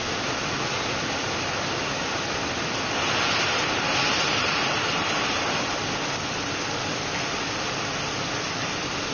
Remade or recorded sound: recorded